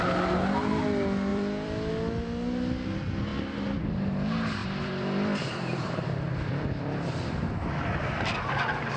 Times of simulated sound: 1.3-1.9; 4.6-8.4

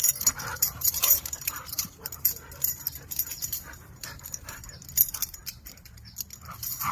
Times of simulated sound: 0.5-4.6

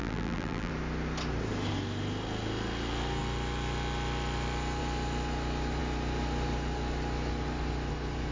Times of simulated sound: 0.0-0.7

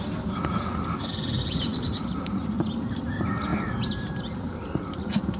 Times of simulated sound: 1.7-3.0; 3.5-5.0